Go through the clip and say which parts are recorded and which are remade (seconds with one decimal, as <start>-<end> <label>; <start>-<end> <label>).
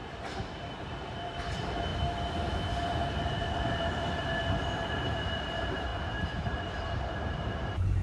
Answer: 0.0-0.6 recorded; 0.6-1.9 remade; 1.9-4.9 recorded; 4.9-8.0 remade